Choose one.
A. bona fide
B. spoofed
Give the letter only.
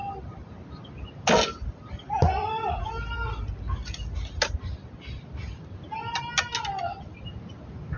A